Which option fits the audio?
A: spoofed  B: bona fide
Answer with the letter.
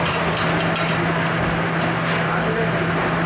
B